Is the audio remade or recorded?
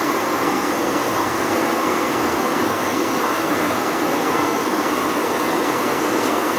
remade